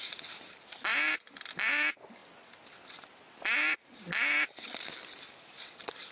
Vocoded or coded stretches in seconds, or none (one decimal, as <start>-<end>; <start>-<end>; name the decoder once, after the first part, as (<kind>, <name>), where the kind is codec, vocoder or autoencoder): none